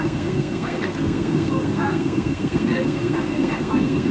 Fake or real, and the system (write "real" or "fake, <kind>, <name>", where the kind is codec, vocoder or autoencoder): fake, codec, SNAC